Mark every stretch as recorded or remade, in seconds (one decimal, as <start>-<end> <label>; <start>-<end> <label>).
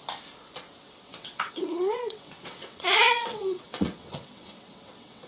0.0-0.8 recorded; 0.8-5.3 remade